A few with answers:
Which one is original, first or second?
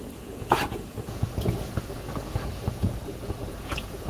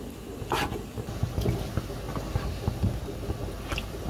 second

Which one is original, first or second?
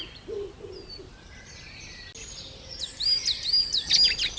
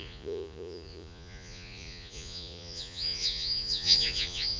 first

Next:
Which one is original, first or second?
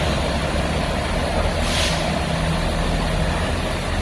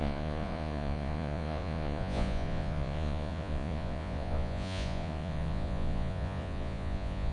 first